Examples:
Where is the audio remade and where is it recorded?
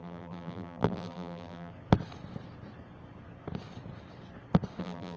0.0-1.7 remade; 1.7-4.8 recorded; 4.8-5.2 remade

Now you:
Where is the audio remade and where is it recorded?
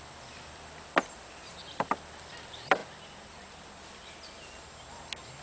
0.0-5.4 recorded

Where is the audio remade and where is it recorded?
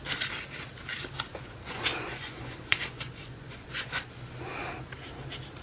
0.0-1.3 recorded; 1.3-4.7 remade; 4.7-5.6 recorded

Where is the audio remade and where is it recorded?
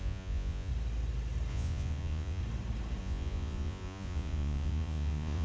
0.0-0.7 remade; 0.7-1.5 recorded; 1.5-2.4 remade; 2.4-3.0 recorded; 3.0-5.4 remade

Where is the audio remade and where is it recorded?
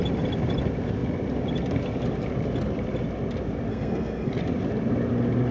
0.0-3.7 recorded; 3.7-4.3 remade; 4.3-5.5 recorded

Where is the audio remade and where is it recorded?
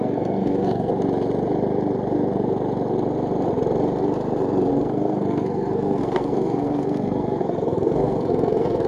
0.0-0.9 remade; 0.9-4.7 recorded; 4.7-8.9 remade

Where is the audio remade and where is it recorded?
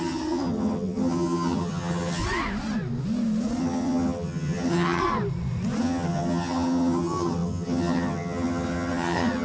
0.0-2.2 remade; 2.2-3.6 recorded; 3.6-5.0 remade; 5.0-5.8 recorded; 5.8-9.4 remade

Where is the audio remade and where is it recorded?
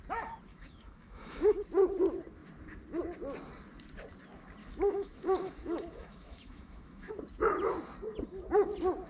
0.0-0.5 recorded; 0.5-1.6 remade; 1.6-4.6 recorded; 4.6-7.1 remade; 7.1-9.1 recorded